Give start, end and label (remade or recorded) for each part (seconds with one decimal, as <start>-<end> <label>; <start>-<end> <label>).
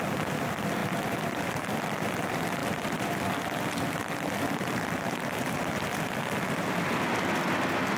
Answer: 0.0-2.6 recorded; 2.6-3.2 remade; 3.2-8.0 recorded